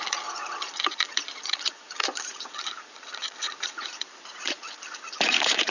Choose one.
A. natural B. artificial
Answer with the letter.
B